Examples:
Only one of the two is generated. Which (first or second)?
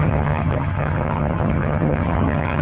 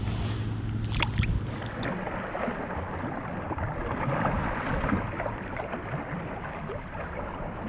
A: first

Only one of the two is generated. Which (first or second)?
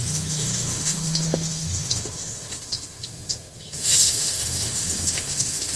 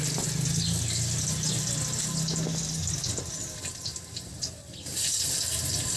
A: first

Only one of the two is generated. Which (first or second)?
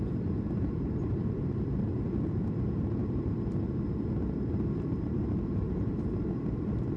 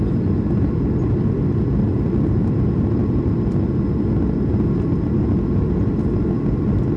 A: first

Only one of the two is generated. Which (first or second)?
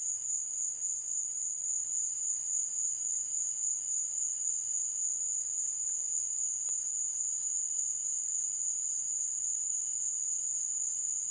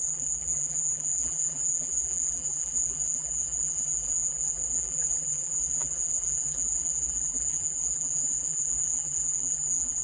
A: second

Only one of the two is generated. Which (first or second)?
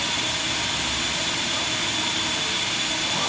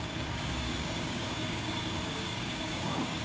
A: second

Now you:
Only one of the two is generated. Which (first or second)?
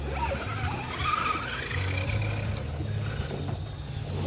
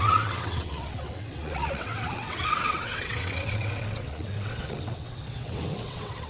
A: second